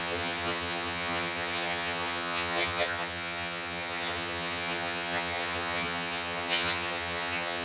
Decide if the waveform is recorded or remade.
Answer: remade